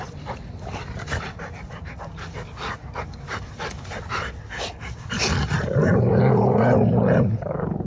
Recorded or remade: recorded